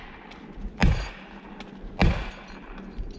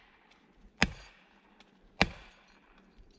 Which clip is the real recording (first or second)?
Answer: first